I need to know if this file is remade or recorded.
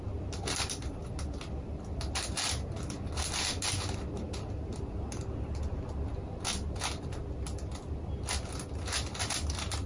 recorded